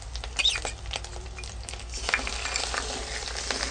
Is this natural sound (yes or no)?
yes